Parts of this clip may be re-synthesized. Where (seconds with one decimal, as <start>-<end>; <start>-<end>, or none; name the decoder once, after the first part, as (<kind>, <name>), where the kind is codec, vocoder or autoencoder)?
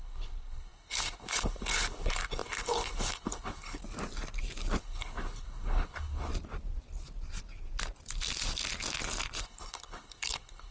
0.0-3.8 (codec, HILCodec); 4.8-6.3; 9.4-10.7